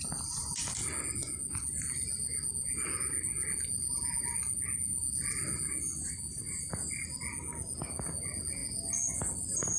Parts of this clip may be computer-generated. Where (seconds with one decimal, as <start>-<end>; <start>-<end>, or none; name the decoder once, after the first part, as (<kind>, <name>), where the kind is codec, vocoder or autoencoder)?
none